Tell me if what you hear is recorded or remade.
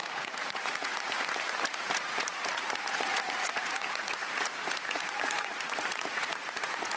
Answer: remade